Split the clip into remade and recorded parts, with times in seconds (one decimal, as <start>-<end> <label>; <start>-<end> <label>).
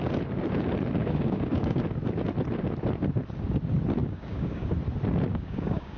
0.0-1.0 recorded; 1.0-1.8 remade; 1.8-4.0 recorded; 4.0-4.7 remade; 4.7-5.3 recorded; 5.3-6.0 remade